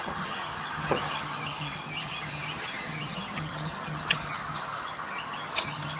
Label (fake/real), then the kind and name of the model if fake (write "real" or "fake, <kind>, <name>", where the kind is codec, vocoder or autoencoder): fake, vocoder, HiFi-GAN